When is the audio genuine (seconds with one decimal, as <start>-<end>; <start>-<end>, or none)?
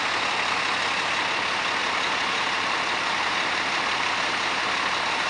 0.0-1.8